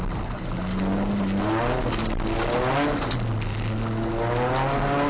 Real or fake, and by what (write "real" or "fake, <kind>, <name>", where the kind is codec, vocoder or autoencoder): real